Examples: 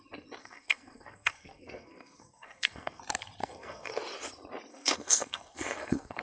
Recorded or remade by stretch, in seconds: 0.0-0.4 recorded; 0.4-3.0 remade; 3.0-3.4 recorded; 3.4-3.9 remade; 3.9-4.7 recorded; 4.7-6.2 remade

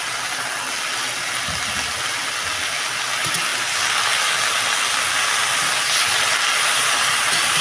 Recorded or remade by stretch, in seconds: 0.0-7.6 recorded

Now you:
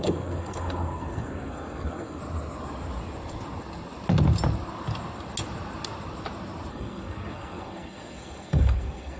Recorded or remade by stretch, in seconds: 0.0-2.2 remade; 2.2-6.7 recorded; 6.7-9.2 remade

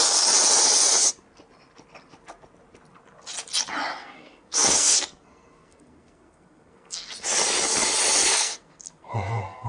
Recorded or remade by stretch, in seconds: 0.0-4.0 recorded; 4.0-7.1 remade; 7.1-8.3 recorded; 8.3-9.7 remade